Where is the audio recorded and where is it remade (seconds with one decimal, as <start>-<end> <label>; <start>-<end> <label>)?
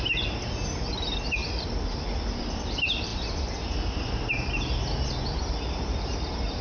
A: 0.0-6.6 recorded